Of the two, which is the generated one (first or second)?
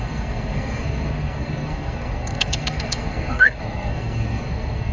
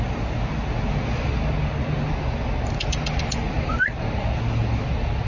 first